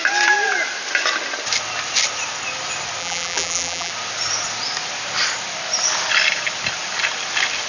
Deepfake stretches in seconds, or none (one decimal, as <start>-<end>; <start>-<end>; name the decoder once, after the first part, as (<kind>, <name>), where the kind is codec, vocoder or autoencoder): 3.0-3.9 (vocoder, BigVGAN v2)

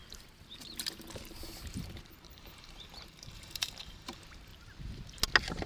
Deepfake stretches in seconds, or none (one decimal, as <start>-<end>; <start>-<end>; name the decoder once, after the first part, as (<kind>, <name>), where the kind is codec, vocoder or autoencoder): 1.2-4.5 (vocoder, BigVGAN v2)

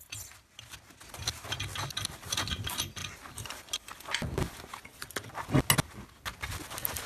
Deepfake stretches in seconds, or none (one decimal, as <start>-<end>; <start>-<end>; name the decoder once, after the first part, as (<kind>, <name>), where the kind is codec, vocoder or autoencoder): none

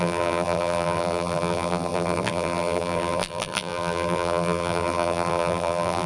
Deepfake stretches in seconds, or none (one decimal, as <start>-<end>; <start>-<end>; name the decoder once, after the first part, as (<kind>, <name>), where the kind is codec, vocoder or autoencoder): 0.0-6.1 (vocoder, BigVGAN v2)

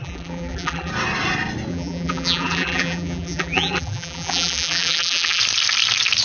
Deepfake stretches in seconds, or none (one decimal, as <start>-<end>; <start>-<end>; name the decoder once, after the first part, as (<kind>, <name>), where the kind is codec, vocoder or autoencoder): 0.0-0.9 (vocoder, BigVGAN v2); 1.7-5.4

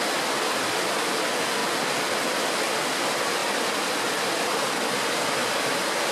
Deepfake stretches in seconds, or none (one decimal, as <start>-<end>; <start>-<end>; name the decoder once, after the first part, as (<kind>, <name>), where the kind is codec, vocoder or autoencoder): 5.4-6.1 (vocoder, BigVGAN v2)